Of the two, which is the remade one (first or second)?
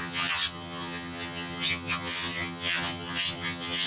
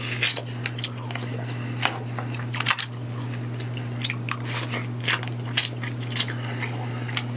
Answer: first